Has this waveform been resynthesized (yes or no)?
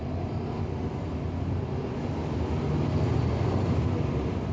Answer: no